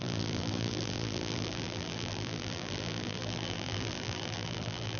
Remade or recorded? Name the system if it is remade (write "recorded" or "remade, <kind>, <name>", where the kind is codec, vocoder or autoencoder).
remade, vocoder, BigVGAN v2